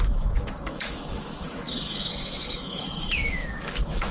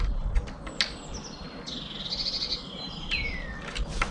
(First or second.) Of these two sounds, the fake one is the first